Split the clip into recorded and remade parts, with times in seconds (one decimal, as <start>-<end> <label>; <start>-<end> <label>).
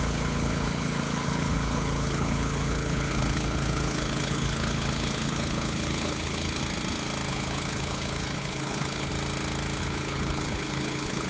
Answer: 0.0-6.6 remade; 6.6-7.3 recorded; 7.3-9.1 remade; 9.1-9.8 recorded; 9.8-11.3 remade